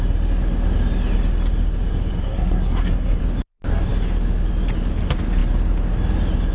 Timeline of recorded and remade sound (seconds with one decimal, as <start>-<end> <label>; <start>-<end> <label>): 0.0-2.2 recorded; 2.2-3.2 remade; 3.2-6.5 recorded